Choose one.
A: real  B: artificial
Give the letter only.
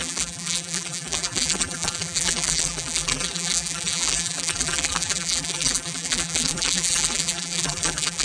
B